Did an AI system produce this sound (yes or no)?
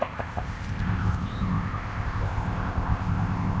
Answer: yes